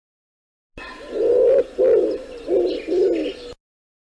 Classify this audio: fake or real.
real